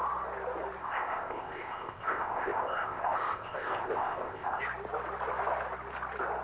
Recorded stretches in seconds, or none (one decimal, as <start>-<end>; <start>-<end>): 0.0-0.8; 4.6-6.4